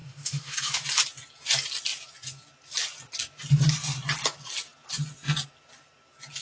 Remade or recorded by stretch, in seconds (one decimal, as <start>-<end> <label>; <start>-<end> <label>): 0.0-0.8 remade; 0.8-6.4 recorded